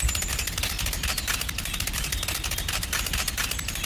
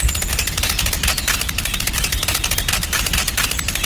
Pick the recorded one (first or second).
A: first